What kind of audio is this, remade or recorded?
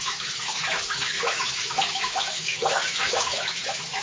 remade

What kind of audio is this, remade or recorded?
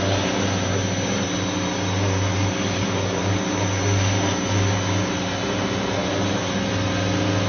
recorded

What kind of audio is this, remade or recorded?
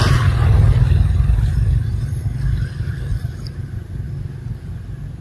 recorded